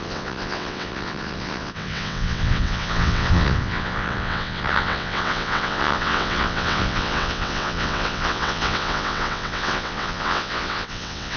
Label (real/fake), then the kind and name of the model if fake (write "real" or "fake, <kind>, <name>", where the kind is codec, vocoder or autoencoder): fake, vocoder, WaveNeXt